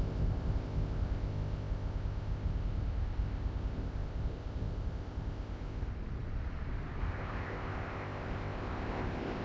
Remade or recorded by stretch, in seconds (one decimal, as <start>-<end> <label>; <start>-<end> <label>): 0.0-5.9 remade; 5.9-7.0 recorded; 7.0-9.4 remade